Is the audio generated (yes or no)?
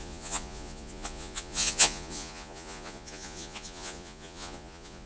yes